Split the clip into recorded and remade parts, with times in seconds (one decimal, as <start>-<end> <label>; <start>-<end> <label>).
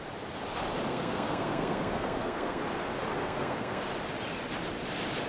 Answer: 0.0-0.9 recorded; 0.9-2.6 remade; 2.6-3.1 recorded; 3.1-3.8 remade; 3.8-5.3 recorded